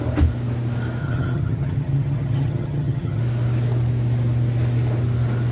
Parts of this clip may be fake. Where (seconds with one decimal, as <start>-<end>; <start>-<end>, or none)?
1.0-3.2